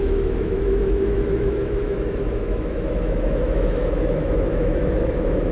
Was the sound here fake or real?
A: fake